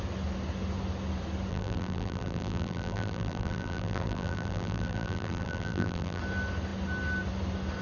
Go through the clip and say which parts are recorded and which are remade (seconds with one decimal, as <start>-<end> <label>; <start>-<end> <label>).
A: 0.0-1.5 recorded; 1.5-6.2 remade; 6.2-7.8 recorded